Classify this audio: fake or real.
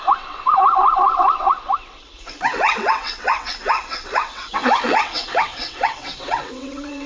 fake